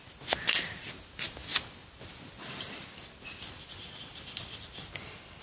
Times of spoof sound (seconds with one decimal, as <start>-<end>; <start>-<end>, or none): none